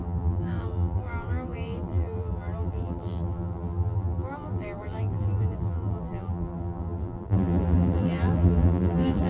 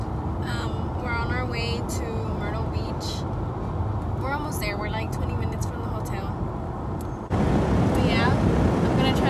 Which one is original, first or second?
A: second